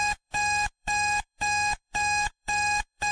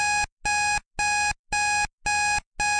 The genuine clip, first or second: second